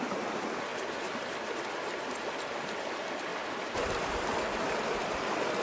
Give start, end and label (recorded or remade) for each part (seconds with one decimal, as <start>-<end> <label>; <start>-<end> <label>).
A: 0.0-5.6 recorded

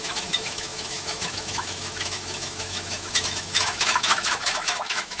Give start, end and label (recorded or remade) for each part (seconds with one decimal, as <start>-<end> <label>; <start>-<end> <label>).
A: 0.0-5.2 remade

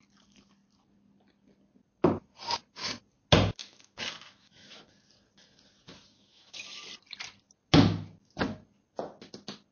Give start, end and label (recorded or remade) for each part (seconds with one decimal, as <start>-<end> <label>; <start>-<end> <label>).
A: 0.0-3.6 recorded; 3.6-4.8 remade; 4.8-6.1 recorded; 6.1-6.8 remade; 6.8-9.7 recorded

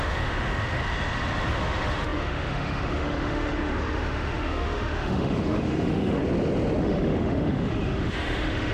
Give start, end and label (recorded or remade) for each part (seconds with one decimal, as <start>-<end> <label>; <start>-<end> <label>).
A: 0.0-0.8 remade; 0.8-1.5 recorded; 1.5-6.2 remade; 6.2-6.8 recorded; 6.8-8.7 remade

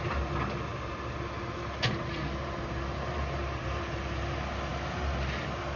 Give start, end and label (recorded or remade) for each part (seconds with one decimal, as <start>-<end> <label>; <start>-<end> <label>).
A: 0.0-5.8 recorded

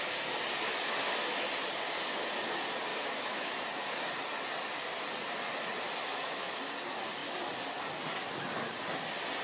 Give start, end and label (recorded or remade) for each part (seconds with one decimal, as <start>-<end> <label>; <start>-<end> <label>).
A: 0.0-2.9 recorded; 2.9-3.5 remade; 3.5-6.1 recorded; 6.1-6.6 remade; 6.6-9.4 recorded

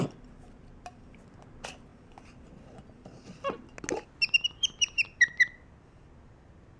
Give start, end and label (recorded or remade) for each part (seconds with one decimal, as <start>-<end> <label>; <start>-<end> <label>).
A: 0.0-6.8 recorded